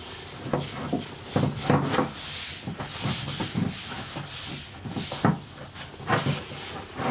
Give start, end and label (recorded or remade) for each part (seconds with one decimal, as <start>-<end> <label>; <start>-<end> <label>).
0.0-7.1 recorded